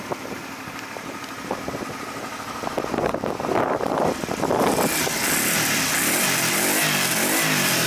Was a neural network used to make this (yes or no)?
no